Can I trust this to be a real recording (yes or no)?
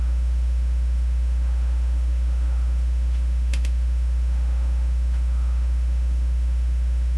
no